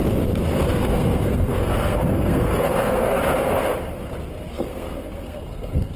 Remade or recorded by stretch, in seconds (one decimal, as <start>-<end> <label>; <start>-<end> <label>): 0.0-0.7 recorded; 0.7-3.2 remade; 3.2-4.5 recorded; 4.5-6.0 remade